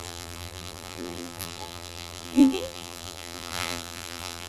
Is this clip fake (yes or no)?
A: yes